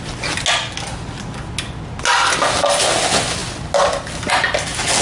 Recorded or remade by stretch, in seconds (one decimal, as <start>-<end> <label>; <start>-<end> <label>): 0.0-2.1 recorded; 2.1-2.8 remade; 2.8-5.0 recorded